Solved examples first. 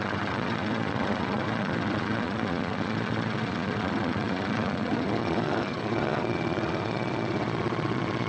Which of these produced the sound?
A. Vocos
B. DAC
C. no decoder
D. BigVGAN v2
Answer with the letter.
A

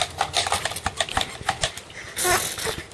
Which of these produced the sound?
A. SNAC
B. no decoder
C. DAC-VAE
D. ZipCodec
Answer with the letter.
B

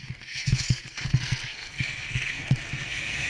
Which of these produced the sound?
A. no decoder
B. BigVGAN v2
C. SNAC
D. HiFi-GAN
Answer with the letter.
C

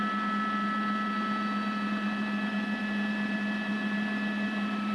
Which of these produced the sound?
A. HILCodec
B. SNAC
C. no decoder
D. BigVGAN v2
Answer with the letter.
C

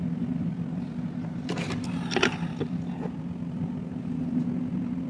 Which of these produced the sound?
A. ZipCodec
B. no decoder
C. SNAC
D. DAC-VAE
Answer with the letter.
B